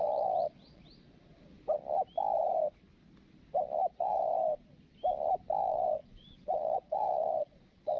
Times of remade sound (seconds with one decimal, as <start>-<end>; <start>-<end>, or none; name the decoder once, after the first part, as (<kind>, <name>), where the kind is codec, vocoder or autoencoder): 0.0-0.8 (vocoder, Vocos); 3.9-4.3; 5.6-8.0